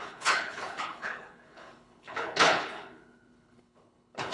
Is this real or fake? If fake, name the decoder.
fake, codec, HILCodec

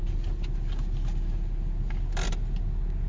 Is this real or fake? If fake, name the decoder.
real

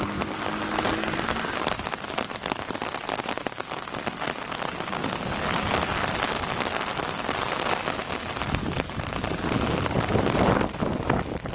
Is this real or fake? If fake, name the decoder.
real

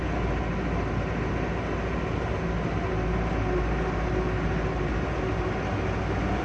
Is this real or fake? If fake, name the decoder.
real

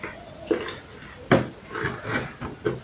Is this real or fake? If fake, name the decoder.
real